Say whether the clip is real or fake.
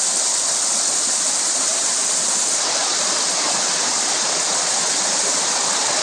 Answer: real